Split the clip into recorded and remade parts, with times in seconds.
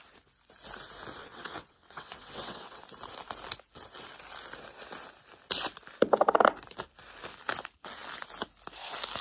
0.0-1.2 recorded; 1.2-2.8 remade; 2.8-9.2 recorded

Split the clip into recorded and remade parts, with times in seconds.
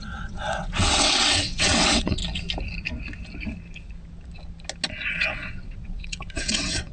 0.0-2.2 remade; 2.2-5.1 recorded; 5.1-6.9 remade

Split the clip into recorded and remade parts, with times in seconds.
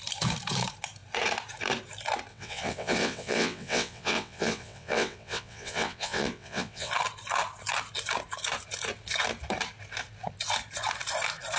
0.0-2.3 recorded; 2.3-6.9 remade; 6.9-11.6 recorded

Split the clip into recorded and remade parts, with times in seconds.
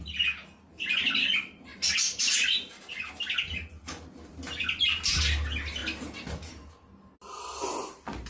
0.0-8.3 recorded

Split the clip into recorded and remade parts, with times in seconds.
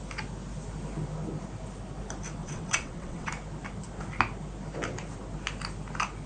0.0-2.4 recorded; 2.4-3.3 remade; 3.3-6.3 recorded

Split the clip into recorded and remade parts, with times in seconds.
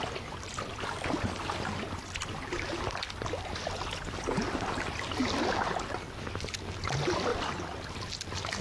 0.0-8.6 recorded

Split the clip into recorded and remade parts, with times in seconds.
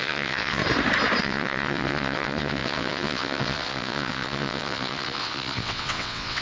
0.0-0.6 remade; 0.6-1.2 recorded; 1.2-6.4 remade